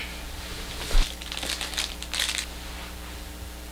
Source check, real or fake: real